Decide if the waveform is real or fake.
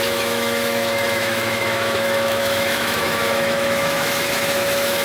fake